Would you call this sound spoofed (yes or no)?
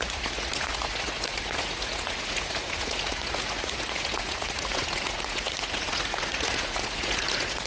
yes